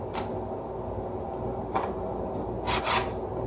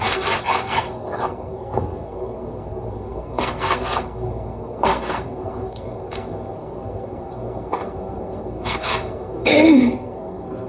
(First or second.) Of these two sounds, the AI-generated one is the second